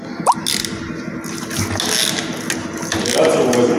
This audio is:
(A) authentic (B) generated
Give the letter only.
A